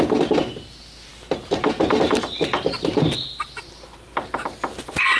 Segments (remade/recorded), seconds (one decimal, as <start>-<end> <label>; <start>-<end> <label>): 0.0-5.2 recorded